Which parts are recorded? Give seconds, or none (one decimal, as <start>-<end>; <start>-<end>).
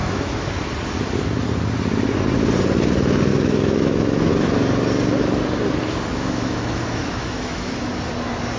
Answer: 0.5-3.3; 4.3-6.1; 7.9-8.6